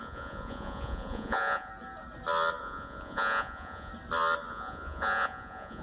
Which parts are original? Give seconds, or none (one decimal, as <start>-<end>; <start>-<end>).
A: 1.7-2.6; 3.9-4.5